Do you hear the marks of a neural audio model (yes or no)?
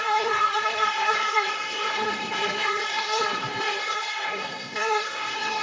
yes